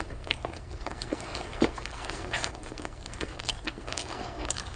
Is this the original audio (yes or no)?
no